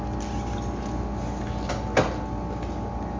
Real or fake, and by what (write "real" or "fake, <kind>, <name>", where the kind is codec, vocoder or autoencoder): real